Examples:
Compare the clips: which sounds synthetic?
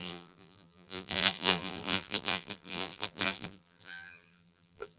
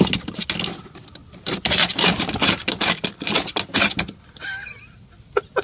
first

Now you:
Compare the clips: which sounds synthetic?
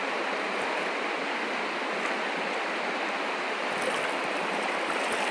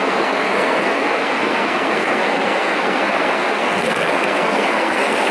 second